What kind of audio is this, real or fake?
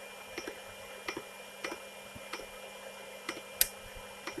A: real